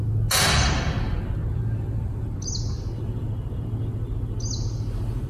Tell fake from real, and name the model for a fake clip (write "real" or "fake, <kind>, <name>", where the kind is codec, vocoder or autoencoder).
real